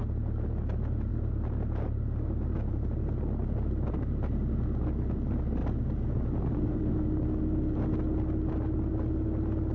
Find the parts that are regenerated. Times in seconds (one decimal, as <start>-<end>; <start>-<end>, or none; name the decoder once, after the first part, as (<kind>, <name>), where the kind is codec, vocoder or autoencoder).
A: 3.4-4.1 (vocoder, BigVGAN v2); 5.6-6.9